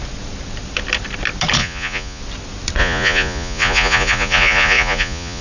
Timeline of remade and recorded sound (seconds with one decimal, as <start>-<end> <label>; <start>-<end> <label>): 0.0-1.6 recorded; 1.6-2.2 remade; 2.2-2.8 recorded; 2.8-5.4 remade